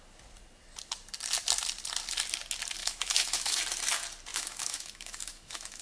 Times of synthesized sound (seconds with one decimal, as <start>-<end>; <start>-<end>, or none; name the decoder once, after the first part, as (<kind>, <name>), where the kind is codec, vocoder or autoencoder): 2.8-3.6 (autoencoder, DAC-VAE); 4.3-5.8